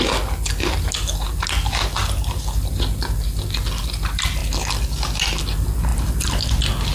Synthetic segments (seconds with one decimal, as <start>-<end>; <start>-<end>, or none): none